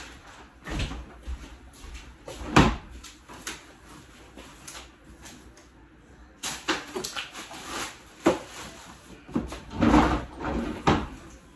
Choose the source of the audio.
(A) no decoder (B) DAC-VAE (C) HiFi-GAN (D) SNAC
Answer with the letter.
A